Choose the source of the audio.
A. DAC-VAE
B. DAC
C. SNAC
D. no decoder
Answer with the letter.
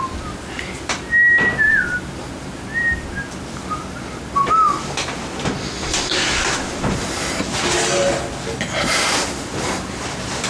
D